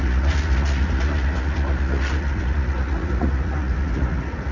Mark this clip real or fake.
fake